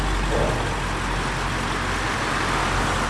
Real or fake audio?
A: real